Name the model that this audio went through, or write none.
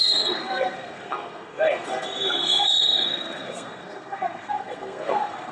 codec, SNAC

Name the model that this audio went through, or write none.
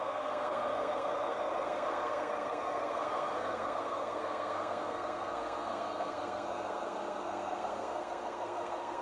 codec, SNAC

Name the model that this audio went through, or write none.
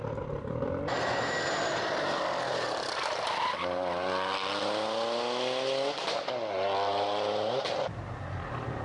none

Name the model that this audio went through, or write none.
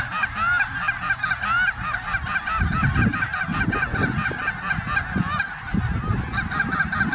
none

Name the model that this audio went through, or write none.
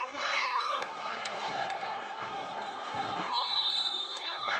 codec, SNAC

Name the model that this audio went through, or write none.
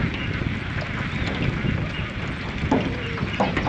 none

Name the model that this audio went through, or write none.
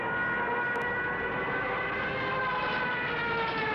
none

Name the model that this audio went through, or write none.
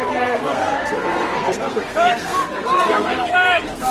codec, SNAC